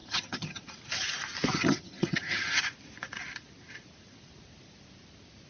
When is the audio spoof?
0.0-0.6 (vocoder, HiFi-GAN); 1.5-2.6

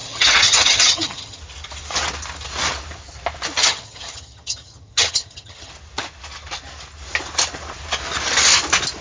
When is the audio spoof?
0.0-1.4 (vocoder, HiFi-GAN); 3.6-5.7

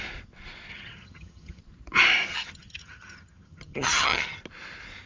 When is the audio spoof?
0.7-1.6 (vocoder, HiFi-GAN); 2.3-4.4

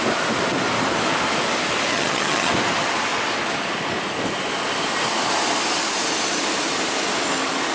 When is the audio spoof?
1.9-2.5 (vocoder, HiFi-GAN)